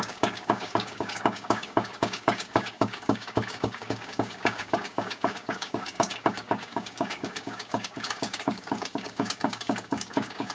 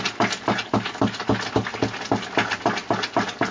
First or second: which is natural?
second